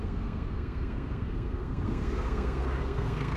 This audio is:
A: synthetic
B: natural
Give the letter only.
A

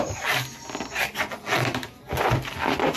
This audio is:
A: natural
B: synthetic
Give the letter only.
A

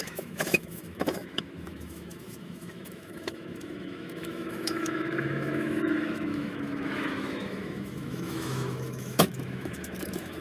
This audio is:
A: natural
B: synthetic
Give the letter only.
B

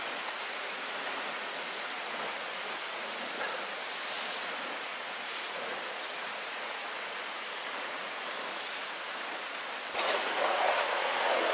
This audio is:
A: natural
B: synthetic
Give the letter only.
B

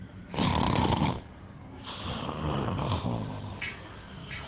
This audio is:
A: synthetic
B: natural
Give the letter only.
A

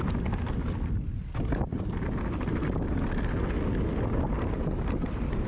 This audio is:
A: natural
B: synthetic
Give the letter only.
A